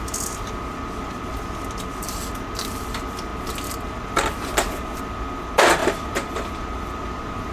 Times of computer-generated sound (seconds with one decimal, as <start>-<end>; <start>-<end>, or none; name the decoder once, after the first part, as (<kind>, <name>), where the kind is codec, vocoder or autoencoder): 5.8-7.0 (vocoder, BigVGAN v2)